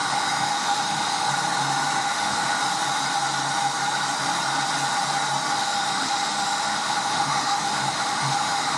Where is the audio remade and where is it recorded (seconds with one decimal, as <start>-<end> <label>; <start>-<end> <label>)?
0.0-1.3 remade; 1.3-2.0 recorded; 2.0-2.6 remade; 2.6-5.5 recorded; 5.5-8.8 remade